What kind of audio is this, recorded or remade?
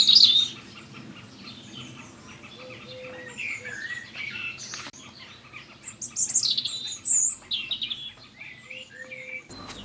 recorded